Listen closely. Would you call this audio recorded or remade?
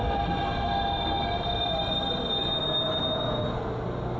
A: recorded